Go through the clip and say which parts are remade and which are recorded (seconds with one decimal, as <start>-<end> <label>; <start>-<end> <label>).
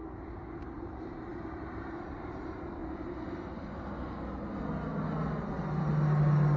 0.0-0.6 recorded; 0.6-2.8 remade; 2.8-6.6 recorded